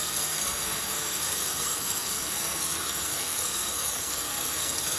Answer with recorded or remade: remade